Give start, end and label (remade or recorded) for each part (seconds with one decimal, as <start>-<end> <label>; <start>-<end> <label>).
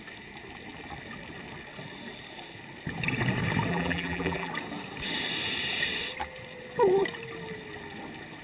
0.0-3.7 recorded; 3.7-4.5 remade; 4.5-8.4 recorded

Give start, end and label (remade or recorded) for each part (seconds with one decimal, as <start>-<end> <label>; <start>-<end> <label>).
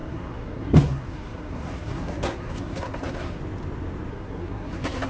0.0-3.4 remade; 3.4-4.1 recorded; 4.1-5.1 remade